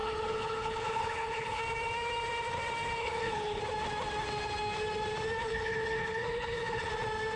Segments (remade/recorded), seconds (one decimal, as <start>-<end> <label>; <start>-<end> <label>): 0.0-1.6 remade; 1.6-3.0 recorded; 3.0-3.6 remade; 3.6-5.5 recorded; 5.5-6.9 remade; 6.9-7.4 recorded